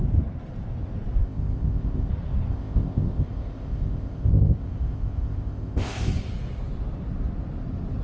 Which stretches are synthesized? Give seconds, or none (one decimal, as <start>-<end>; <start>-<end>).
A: 1.2-2.1; 2.5-6.1